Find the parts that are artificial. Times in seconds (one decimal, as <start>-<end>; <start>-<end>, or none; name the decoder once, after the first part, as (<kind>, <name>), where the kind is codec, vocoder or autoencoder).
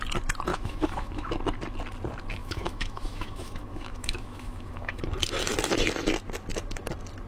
0.5-1.3 (autoencoder, DAC-VAE); 2.4-5.0